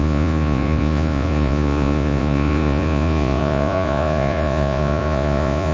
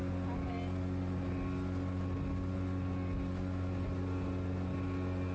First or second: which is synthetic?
first